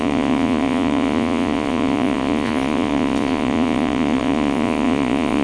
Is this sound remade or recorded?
remade